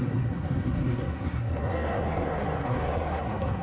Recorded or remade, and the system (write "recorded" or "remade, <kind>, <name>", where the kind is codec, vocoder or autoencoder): remade, codec, SNAC